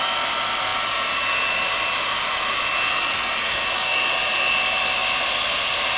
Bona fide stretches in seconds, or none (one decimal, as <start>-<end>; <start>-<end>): 0.0-6.0